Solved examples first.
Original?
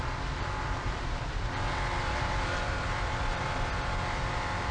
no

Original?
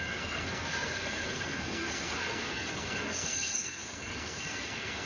no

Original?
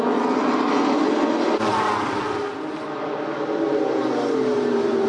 yes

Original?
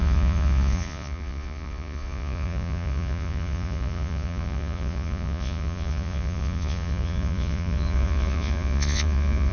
no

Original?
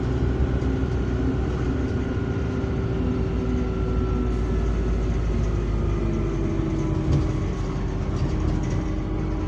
yes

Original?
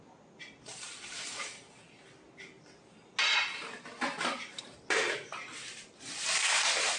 yes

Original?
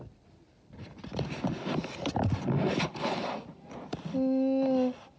yes